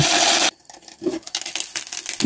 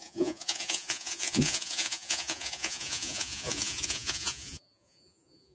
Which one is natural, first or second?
first